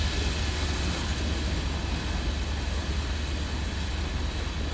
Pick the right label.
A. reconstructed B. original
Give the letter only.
B